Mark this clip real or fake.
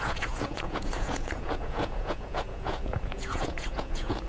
fake